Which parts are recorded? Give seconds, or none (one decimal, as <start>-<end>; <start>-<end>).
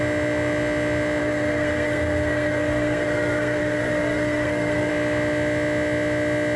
0.0-1.2; 4.9-6.6